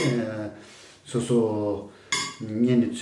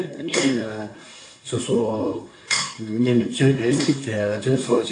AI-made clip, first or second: second